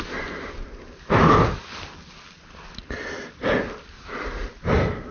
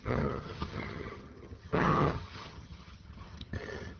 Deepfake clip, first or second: second